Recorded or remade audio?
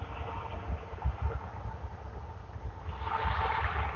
recorded